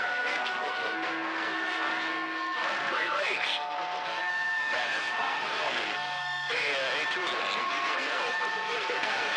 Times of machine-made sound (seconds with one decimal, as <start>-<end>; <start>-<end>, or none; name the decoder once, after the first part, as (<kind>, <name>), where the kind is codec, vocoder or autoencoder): 0.0-6.7 (codec, SNAC); 7.4-9.4